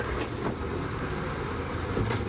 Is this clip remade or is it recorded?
recorded